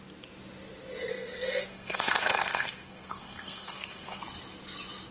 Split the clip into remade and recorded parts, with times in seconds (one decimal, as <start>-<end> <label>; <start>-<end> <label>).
0.0-1.1 recorded; 1.1-4.2 remade; 4.2-5.1 recorded